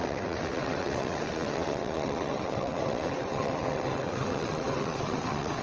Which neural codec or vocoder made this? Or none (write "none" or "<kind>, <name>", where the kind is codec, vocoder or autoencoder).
vocoder, WaveNeXt